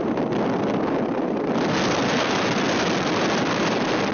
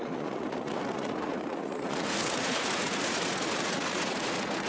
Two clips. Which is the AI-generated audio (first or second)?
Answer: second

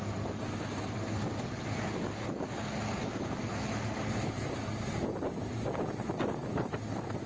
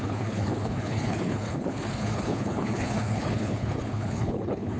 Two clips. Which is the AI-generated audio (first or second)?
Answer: second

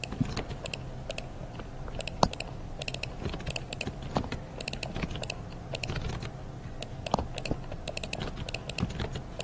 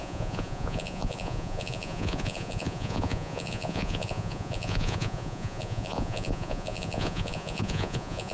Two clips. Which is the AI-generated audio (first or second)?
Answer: second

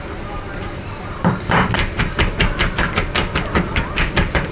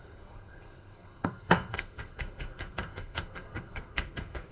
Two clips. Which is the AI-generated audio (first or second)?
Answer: second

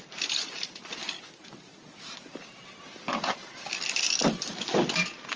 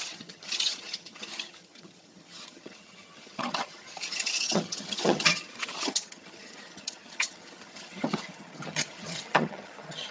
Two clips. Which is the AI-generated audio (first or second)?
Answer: second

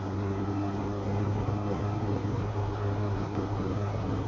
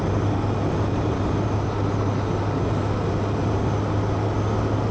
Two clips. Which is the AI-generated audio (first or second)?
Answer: first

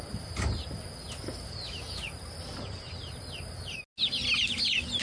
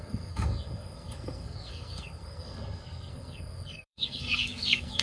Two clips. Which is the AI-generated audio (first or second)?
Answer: second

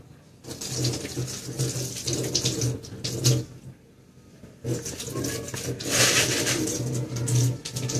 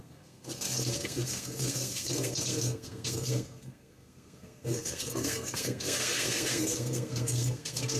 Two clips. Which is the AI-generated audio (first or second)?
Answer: second